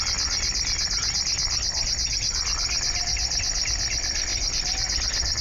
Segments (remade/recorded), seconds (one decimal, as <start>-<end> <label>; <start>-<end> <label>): 0.0-5.4 recorded